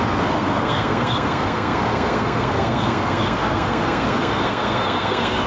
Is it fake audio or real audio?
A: fake